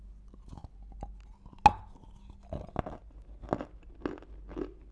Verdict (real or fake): real